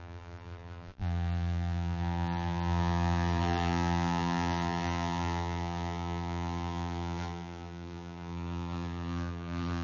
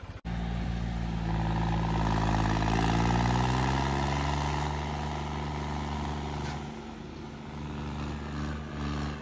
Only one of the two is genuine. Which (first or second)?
second